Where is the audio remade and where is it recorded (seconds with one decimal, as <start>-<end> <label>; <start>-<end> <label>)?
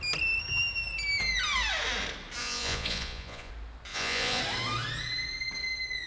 0.0-2.4 recorded; 2.4-3.5 remade; 3.5-3.9 recorded; 3.9-4.4 remade; 4.4-6.1 recorded